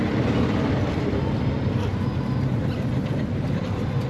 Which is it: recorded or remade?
recorded